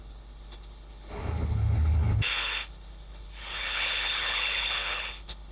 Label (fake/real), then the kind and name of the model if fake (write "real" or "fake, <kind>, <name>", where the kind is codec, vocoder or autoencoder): fake, codec, HILCodec